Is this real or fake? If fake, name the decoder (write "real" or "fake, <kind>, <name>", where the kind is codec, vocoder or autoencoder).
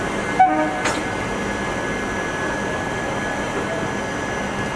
real